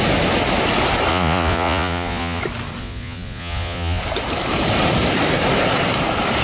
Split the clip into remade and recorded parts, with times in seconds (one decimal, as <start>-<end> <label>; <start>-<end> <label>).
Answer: 0.0-1.1 recorded; 1.1-2.4 remade; 2.4-2.8 recorded; 2.8-4.0 remade; 4.0-6.4 recorded